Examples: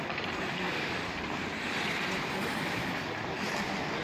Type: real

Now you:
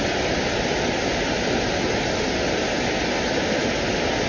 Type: real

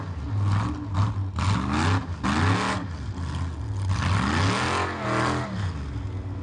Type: real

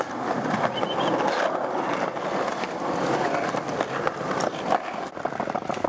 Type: real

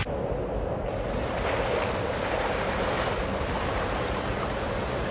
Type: real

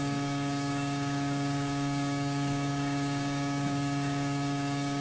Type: fake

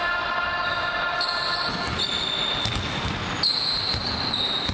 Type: real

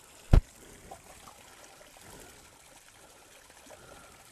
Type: real